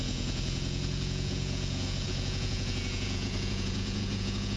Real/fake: fake